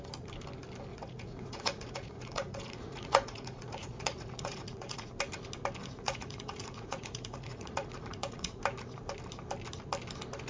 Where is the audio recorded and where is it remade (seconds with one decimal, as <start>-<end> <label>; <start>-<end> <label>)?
0.0-0.9 recorded; 0.9-5.1 remade; 5.1-5.8 recorded; 5.8-8.6 remade; 8.6-10.5 recorded